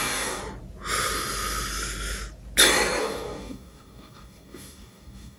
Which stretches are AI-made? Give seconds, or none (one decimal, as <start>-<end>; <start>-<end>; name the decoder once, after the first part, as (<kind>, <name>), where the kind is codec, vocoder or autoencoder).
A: 0.0-0.4 (codec, DAC); 3.0-5.4